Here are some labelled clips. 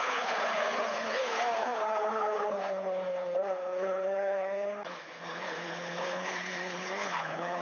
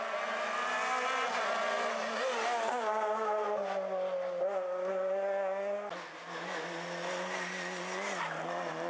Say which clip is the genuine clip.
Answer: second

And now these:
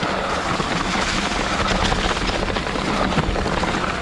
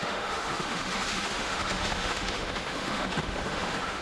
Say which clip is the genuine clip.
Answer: first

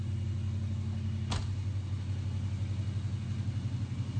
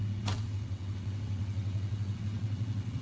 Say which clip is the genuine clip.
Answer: first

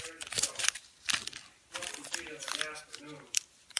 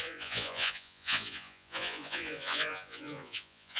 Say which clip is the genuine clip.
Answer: first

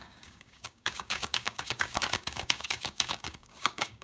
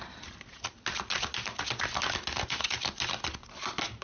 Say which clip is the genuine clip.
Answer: second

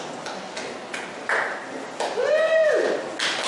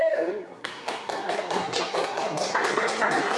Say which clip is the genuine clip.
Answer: first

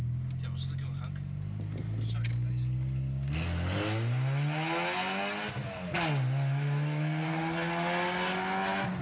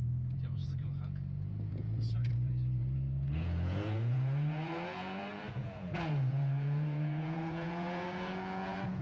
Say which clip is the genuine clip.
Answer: first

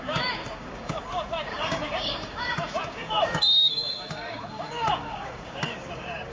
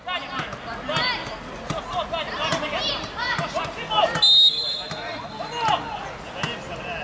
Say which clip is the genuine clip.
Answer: second